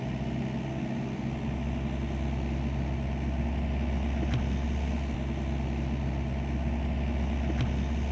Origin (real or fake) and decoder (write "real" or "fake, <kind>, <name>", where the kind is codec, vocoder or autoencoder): real